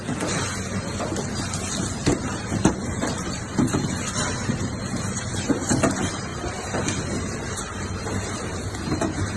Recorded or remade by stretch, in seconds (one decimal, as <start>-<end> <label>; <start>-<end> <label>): 0.0-2.0 recorded; 2.0-5.7 remade; 5.7-9.4 recorded